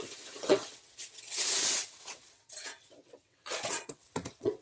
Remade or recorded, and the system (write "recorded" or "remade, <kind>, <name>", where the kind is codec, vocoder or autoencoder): remade, vocoder, WaveNeXt